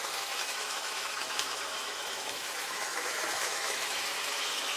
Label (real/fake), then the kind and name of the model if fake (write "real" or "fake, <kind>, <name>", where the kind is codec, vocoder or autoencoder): fake, autoencoder, DAC-VAE